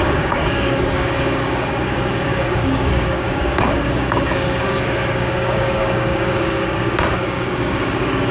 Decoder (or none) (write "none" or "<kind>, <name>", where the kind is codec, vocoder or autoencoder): codec, DAC